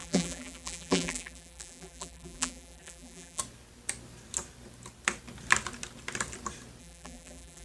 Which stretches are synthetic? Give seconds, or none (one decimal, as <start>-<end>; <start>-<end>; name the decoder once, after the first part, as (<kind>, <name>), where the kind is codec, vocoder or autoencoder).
0.0-3.4 (vocoder, BigVGAN v2); 6.8-7.6